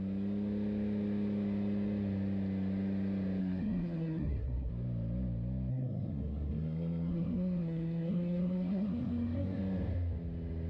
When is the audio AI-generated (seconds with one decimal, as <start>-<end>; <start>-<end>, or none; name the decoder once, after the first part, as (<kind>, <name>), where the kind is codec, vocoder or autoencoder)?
3.4-4.7 (codec, SNAC); 5.7-9.6